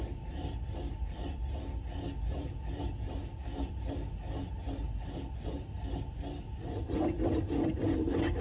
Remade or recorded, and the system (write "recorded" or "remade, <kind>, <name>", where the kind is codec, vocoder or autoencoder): recorded